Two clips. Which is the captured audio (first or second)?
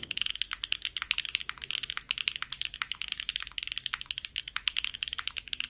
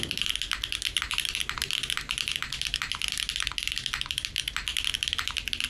first